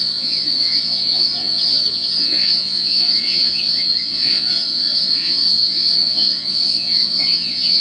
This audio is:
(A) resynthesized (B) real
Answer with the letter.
A